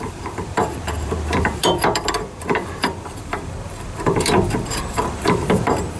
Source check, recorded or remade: remade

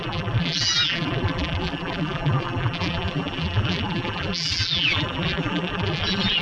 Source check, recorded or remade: remade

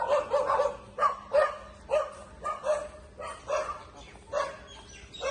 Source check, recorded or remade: recorded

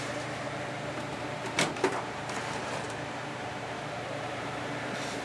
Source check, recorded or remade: remade